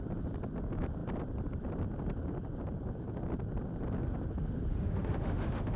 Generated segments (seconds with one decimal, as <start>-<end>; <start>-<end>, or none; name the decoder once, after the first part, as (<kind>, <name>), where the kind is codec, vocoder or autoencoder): 4.7-5.8 (autoencoder, DAC-VAE)